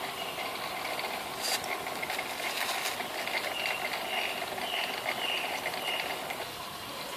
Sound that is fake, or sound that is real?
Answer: real